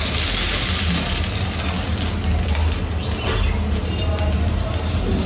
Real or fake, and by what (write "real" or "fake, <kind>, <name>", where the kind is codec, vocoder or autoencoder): real